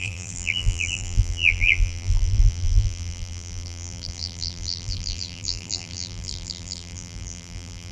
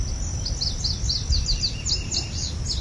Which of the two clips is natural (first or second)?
second